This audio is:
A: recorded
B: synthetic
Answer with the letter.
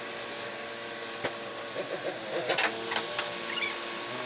A